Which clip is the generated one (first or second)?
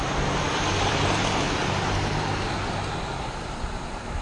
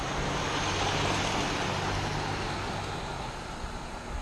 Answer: first